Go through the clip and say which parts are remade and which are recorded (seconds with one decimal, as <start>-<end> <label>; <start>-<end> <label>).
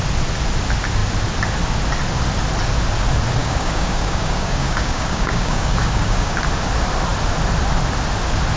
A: 0.0-3.4 recorded; 3.4-6.4 remade; 6.4-8.6 recorded